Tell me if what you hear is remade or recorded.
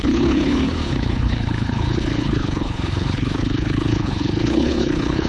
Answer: remade